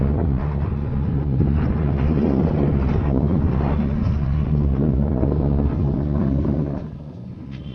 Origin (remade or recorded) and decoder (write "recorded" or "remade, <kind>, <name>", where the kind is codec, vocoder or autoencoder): remade, vocoder, Vocos